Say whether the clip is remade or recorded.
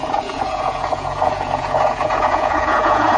remade